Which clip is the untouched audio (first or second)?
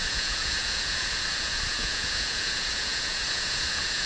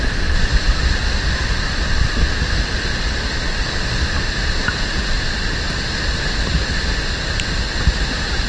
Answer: second